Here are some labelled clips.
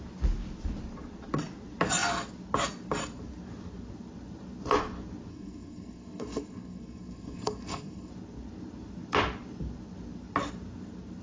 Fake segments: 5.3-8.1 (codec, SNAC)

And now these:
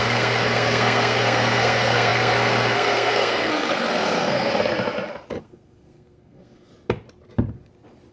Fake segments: 0.0-4.5 (codec, SNAC); 5.4-6.7

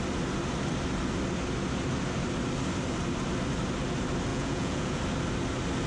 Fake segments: 4.3-5.0 (vocoder, Vocos)

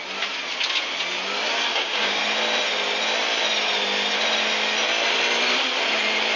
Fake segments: 1.7-2.2 (codec, DAC)

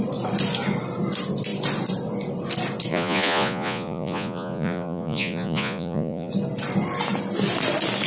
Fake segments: 2.9-6.3 (vocoder, Vocos)

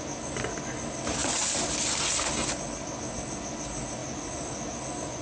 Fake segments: none

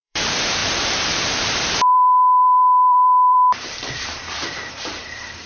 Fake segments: 0.0-5.5 (vocoder, BigVGAN v2)